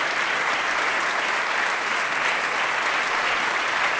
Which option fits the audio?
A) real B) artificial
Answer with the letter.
A